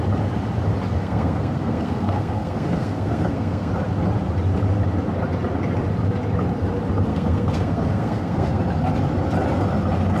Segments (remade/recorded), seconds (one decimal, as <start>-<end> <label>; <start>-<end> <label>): 0.0-0.9 recorded; 0.9-3.7 remade; 3.7-7.1 recorded; 7.1-8.6 remade; 8.6-10.2 recorded